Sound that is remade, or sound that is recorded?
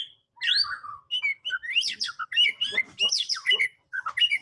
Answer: recorded